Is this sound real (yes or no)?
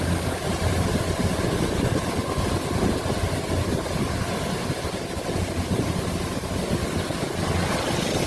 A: yes